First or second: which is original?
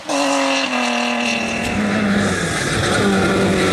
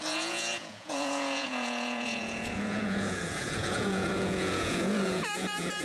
first